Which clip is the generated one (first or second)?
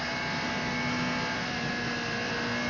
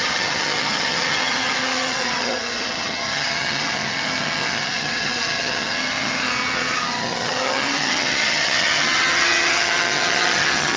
second